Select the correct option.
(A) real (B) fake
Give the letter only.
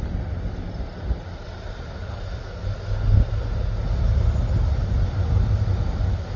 A